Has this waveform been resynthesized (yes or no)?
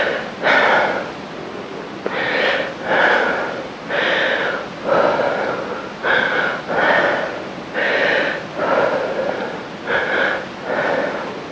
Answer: no